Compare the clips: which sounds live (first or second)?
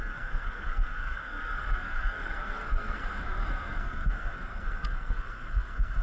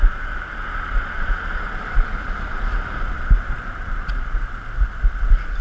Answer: second